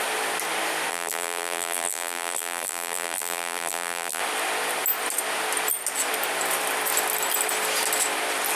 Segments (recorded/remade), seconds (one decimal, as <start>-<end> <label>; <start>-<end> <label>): 0.0-0.9 recorded; 0.9-4.2 remade; 4.2-8.6 recorded